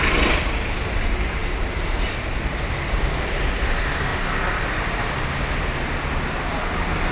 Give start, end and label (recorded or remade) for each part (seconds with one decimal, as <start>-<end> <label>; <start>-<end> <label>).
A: 0.0-7.1 recorded